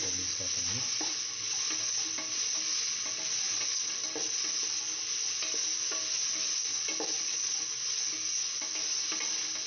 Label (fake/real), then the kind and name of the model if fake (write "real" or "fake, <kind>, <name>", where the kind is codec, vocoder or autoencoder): real